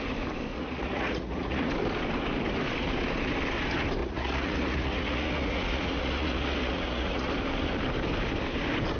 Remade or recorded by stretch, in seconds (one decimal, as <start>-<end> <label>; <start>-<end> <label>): 0.0-0.5 recorded; 0.5-1.7 remade; 1.7-4.0 recorded; 4.0-7.3 remade; 7.3-9.0 recorded